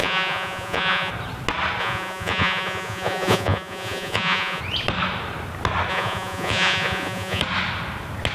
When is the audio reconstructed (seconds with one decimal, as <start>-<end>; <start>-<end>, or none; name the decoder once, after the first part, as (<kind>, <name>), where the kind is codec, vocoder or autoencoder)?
0.0-1.1 (vocoder, Vocos); 1.8-4.6; 5.9-7.4